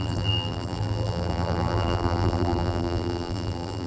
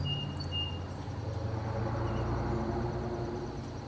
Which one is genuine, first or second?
second